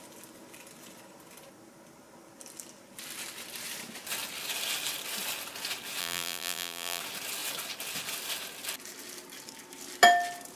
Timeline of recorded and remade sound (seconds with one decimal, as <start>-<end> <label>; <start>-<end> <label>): 0.0-6.0 recorded; 6.0-7.0 remade; 7.0-10.6 recorded